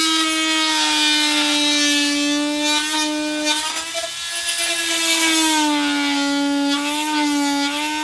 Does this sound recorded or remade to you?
recorded